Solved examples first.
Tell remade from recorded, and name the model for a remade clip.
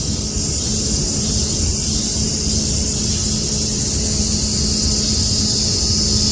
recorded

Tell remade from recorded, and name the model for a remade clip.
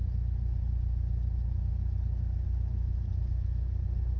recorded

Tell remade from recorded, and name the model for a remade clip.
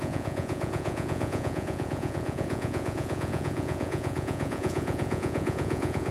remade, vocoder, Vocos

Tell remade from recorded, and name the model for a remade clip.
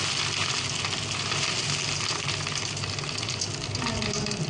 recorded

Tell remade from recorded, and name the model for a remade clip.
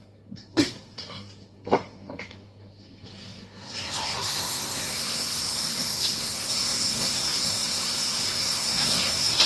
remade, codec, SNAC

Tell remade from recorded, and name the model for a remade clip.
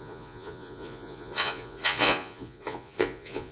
remade, vocoder, Vocos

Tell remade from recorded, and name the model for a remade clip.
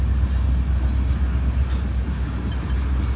recorded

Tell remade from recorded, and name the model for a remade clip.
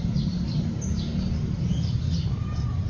recorded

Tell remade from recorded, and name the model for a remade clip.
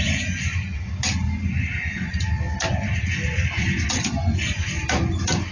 recorded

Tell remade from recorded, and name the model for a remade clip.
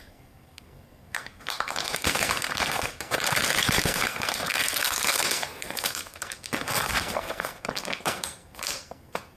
remade, codec, SNAC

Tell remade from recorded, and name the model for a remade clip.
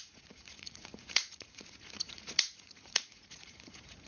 remade, vocoder, Vocos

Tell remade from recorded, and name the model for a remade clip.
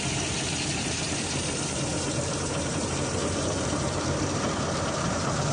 remade, vocoder, BigVGAN v2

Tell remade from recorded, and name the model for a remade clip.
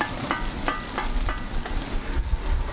recorded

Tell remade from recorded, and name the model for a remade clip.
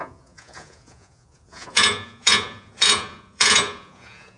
remade, vocoder, Vocos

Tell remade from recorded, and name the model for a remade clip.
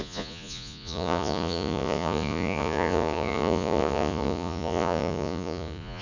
remade, vocoder, Vocos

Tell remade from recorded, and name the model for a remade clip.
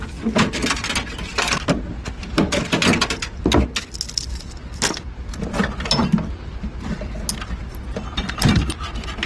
recorded